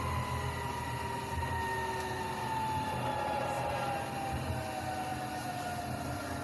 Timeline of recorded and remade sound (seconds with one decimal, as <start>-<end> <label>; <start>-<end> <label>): 0.0-6.4 recorded